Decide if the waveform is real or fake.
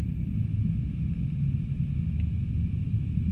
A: real